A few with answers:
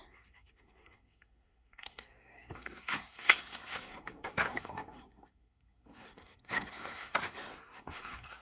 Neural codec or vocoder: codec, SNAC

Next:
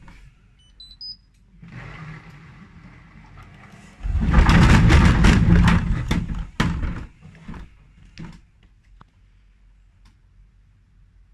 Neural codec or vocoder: none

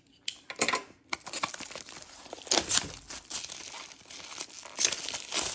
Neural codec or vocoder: none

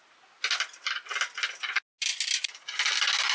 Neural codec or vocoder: none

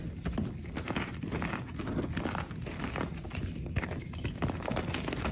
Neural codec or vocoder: none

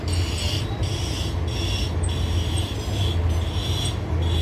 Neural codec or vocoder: none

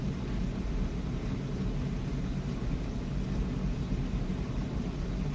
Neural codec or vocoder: none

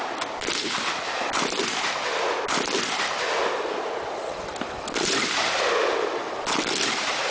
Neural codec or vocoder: none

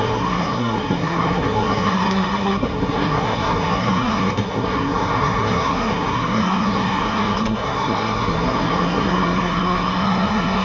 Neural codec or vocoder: codec, SNAC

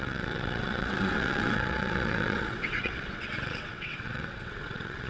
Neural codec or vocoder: vocoder, WaveNeXt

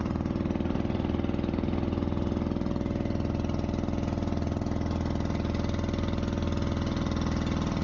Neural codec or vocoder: none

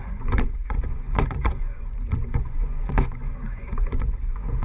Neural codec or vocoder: vocoder, Vocos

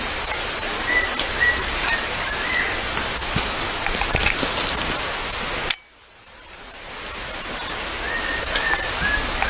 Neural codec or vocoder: none